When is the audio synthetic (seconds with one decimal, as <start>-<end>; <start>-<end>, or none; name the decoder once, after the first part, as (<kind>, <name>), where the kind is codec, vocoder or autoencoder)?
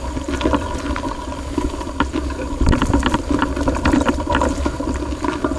none